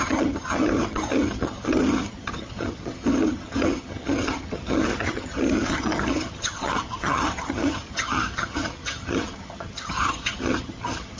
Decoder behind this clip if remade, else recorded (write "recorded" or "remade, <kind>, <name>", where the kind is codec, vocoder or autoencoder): remade, vocoder, HiFi-GAN